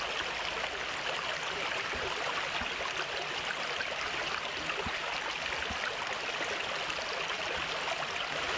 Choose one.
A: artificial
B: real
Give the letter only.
B